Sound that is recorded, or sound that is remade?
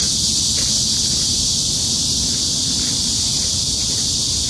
recorded